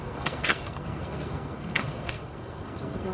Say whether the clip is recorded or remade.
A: remade